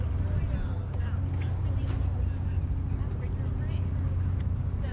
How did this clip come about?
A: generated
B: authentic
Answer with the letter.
B